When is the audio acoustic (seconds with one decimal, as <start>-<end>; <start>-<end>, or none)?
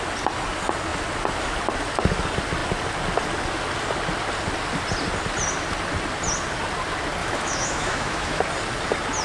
0.0-7.2; 8.4-9.2